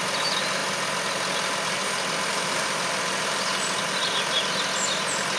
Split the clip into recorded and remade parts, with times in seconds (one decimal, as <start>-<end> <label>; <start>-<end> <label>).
0.0-5.4 recorded